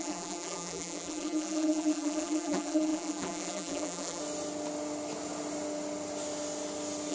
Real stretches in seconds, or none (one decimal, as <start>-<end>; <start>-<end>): 4.2-7.1